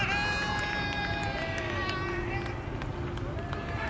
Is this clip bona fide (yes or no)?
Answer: yes